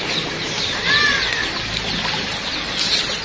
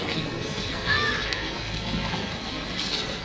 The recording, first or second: first